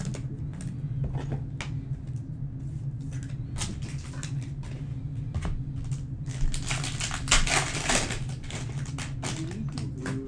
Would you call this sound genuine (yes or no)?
yes